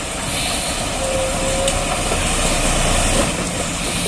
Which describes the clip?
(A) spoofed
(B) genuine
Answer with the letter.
B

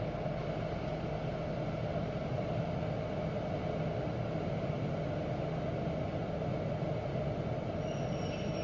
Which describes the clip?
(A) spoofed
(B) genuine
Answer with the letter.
B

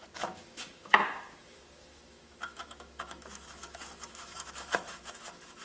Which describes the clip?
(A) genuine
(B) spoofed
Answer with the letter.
B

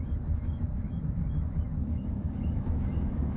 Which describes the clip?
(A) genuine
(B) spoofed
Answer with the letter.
B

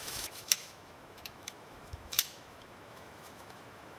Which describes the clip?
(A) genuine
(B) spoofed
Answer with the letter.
B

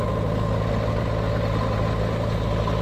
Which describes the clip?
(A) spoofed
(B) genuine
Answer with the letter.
B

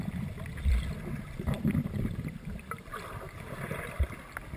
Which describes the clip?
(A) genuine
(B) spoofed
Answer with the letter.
A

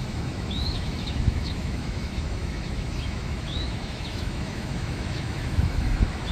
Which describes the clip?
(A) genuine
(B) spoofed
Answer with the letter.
B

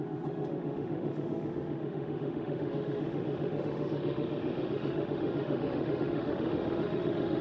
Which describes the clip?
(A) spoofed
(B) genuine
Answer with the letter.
A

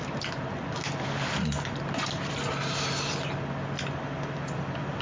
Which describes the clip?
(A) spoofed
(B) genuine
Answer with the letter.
B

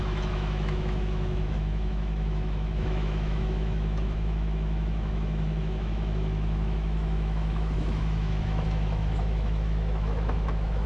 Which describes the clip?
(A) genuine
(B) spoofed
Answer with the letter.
B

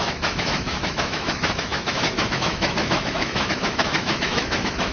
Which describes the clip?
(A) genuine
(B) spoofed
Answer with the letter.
B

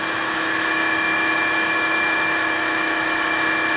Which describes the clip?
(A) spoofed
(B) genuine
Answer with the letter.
A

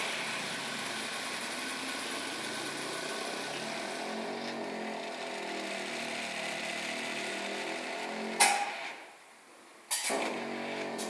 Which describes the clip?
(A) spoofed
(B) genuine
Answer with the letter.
B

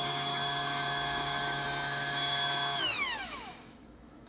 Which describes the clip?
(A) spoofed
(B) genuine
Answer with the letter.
A